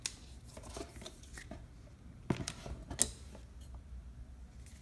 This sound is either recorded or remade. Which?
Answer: recorded